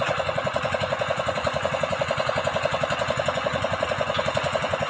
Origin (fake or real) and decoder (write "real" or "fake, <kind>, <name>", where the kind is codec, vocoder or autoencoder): fake, vocoder, Vocos